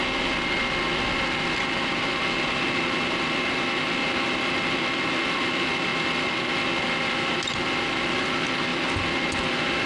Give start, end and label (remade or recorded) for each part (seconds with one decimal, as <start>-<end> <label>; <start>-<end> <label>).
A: 0.0-9.9 recorded